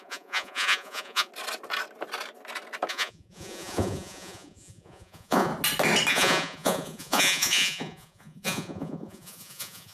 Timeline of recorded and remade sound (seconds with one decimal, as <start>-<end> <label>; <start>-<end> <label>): 0.0-1.3 remade; 1.3-2.9 recorded; 2.9-5.5 remade; 5.5-6.1 recorded; 6.1-9.9 remade